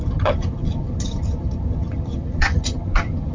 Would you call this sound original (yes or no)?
no